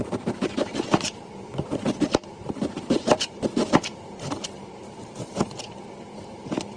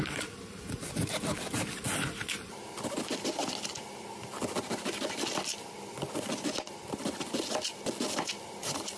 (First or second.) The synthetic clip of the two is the first